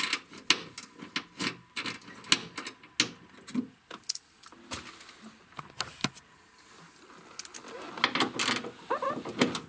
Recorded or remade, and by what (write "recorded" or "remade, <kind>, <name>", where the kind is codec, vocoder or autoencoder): recorded